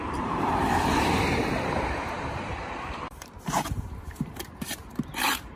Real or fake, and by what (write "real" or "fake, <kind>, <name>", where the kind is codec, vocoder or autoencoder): fake, vocoder, BigVGAN v2